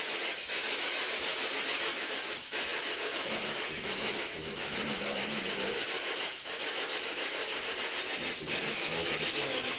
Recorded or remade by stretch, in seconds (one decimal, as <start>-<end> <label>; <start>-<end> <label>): 0.0-7.4 remade; 7.4-8.4 recorded; 8.4-9.8 remade